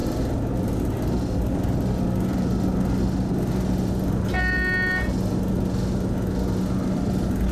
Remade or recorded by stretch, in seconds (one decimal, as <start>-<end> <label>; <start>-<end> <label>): 0.0-7.5 recorded

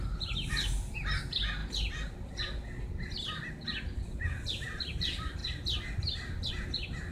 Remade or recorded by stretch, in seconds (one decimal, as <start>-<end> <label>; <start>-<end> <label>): 0.0-7.1 recorded

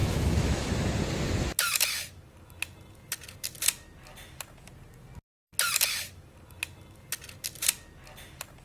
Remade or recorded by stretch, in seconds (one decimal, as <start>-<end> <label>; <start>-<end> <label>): 0.0-0.7 remade; 0.7-8.6 recorded

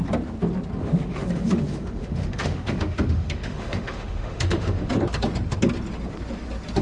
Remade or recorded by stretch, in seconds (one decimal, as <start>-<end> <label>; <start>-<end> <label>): 0.0-0.8 recorded; 0.8-4.9 remade; 4.9-6.8 recorded

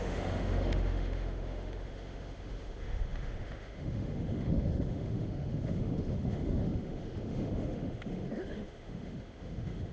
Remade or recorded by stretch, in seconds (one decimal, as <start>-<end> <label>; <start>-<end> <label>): 0.0-9.9 remade

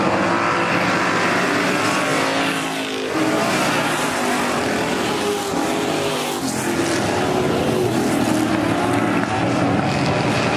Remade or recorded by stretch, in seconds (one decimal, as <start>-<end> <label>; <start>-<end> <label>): 0.0-10.6 recorded